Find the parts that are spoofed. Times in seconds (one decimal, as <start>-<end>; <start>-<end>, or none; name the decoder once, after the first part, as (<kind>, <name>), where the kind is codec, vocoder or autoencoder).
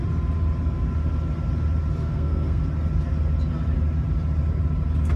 2.0-2.6 (codec, SNAC)